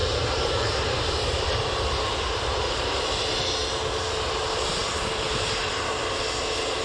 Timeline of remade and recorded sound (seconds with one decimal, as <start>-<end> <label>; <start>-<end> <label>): 0.0-2.8 remade; 2.8-4.8 recorded; 4.8-5.7 remade; 5.7-6.8 recorded